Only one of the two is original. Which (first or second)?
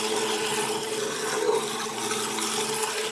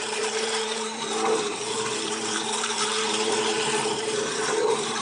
first